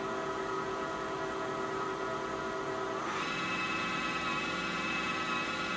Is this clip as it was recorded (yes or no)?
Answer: yes